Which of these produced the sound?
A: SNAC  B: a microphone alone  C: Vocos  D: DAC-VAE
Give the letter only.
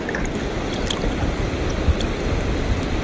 B